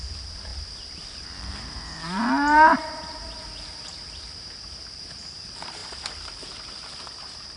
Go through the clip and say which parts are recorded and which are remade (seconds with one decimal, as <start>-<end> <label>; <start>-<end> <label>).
0.0-7.6 remade